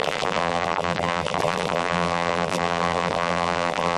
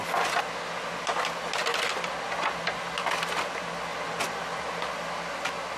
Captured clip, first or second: second